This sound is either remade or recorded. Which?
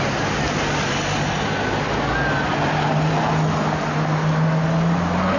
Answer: recorded